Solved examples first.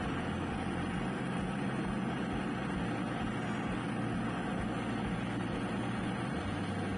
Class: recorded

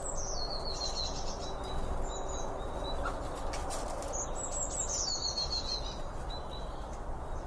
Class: recorded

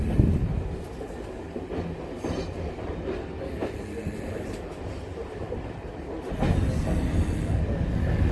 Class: recorded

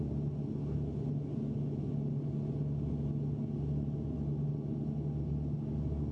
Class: recorded